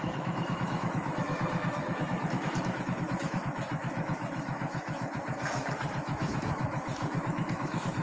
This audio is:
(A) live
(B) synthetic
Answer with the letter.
B